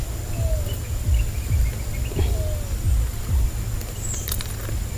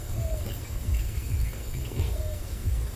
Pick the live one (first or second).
first